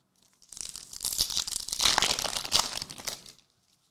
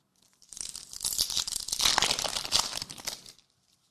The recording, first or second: first